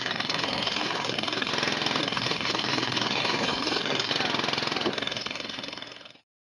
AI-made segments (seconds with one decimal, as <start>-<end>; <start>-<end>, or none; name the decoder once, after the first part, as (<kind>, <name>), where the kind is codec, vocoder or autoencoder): 0.0-1.5 (codec, SNAC); 2.0-4.1; 4.9-6.5